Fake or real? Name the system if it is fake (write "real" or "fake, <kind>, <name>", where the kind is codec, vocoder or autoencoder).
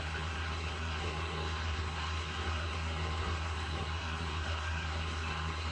fake, codec, SNAC